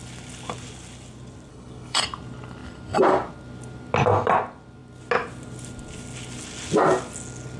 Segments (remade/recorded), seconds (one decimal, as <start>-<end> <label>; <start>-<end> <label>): 0.0-1.5 recorded; 1.5-2.0 remade; 2.0-7.6 recorded